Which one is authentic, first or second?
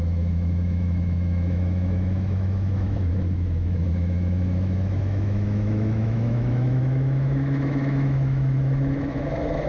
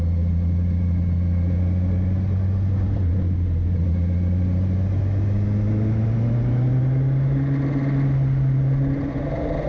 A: second